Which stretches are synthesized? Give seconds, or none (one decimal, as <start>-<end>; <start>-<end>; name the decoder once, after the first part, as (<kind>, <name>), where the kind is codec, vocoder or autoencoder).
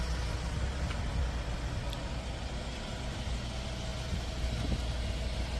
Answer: none